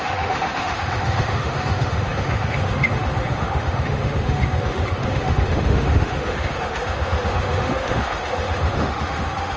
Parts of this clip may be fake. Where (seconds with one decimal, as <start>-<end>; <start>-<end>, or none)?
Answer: 0.0-9.6